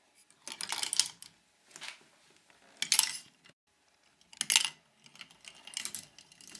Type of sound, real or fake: real